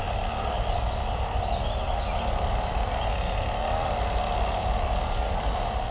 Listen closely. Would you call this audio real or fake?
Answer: real